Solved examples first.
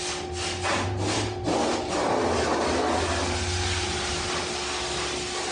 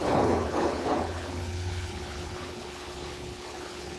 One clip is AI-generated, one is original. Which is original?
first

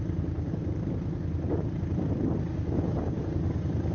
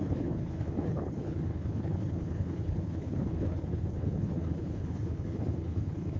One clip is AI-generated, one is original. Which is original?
first